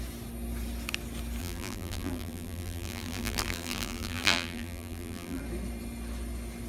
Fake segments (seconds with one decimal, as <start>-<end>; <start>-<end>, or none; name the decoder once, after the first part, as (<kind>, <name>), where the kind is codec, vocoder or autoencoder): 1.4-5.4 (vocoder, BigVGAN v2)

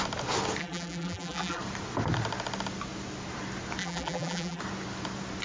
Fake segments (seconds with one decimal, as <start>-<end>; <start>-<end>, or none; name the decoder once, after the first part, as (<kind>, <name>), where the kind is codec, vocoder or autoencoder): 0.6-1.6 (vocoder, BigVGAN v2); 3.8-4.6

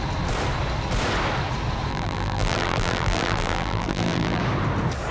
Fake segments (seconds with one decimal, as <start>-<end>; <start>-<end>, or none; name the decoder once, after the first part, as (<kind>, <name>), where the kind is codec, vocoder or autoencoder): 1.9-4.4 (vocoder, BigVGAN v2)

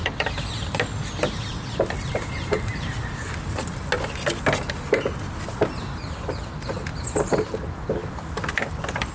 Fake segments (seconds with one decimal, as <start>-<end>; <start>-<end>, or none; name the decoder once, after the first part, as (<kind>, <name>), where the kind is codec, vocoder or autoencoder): 6.9-7.5 (vocoder, BigVGAN v2)

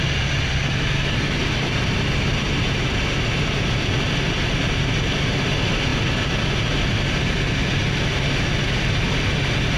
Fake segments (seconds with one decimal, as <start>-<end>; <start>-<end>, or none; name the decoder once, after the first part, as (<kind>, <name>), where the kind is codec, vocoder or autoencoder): 1.4-3.0 (vocoder, BigVGAN v2)